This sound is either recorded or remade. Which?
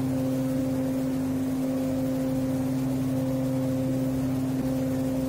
recorded